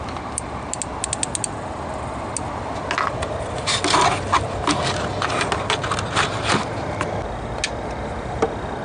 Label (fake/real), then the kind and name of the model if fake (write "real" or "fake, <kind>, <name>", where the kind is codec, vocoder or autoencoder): real